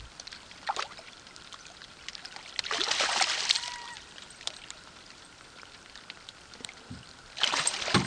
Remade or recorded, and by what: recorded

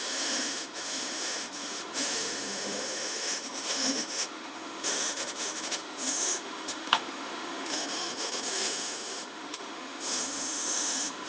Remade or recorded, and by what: remade, autoencoder, DAC-VAE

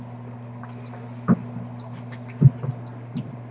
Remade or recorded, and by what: recorded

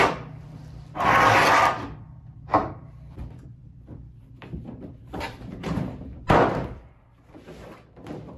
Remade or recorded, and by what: remade, vocoder, BigVGAN v2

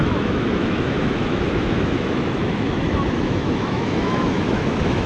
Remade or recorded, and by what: remade, autoencoder, DAC-VAE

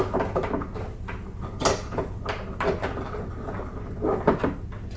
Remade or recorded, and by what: recorded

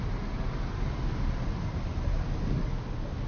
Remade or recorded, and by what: recorded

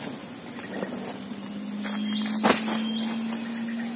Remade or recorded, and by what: recorded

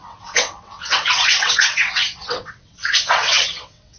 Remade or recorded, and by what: remade, vocoder, WaveNeXt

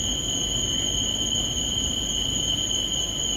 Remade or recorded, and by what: recorded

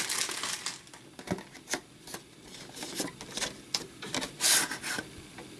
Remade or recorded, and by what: recorded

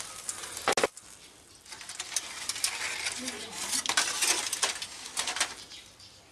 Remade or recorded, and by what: recorded